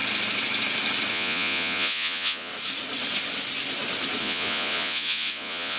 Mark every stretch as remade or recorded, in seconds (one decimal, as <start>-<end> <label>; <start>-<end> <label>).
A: 0.0-1.1 recorded; 1.1-2.5 remade; 2.5-4.2 recorded; 4.2-5.8 remade